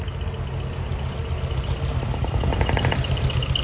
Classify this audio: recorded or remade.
recorded